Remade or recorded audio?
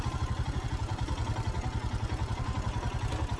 recorded